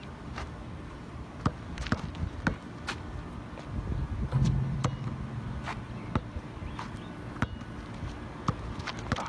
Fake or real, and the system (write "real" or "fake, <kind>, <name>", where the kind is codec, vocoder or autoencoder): real